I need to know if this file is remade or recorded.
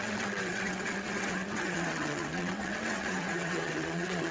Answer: remade